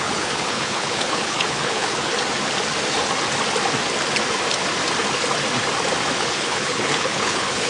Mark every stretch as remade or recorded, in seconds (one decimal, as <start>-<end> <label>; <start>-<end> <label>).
0.0-2.1 remade; 2.1-6.2 recorded; 6.2-7.7 remade